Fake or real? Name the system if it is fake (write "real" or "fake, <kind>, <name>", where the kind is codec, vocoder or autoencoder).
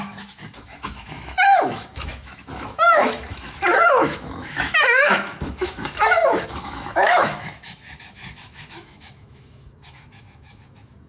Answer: fake, autoencoder, DAC-VAE